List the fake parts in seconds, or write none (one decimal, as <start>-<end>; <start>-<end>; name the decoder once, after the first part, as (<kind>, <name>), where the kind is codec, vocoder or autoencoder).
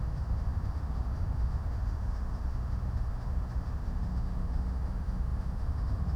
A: 0.0-6.2 (autoencoder, DAC-VAE)